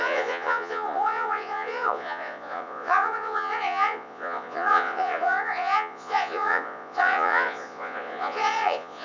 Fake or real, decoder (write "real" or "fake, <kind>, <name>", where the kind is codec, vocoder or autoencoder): fake, vocoder, Vocos